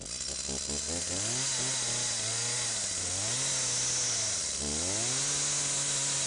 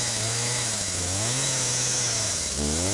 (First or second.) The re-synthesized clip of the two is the second